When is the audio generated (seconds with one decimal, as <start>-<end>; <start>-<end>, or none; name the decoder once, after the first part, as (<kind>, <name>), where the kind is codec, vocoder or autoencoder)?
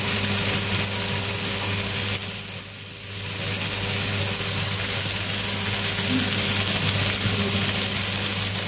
none